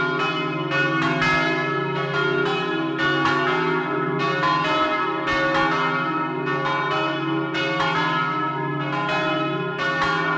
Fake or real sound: real